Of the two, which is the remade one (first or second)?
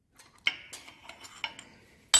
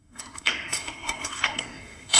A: second